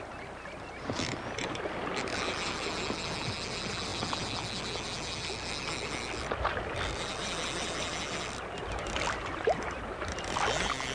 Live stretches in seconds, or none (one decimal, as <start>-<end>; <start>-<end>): 0.0-10.9